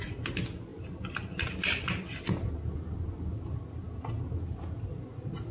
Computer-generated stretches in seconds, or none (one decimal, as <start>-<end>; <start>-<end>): none